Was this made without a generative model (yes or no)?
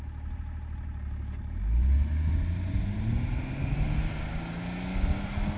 yes